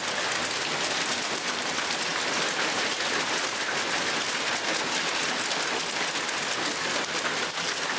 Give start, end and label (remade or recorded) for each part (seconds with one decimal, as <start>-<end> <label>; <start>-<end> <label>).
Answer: 0.0-8.0 recorded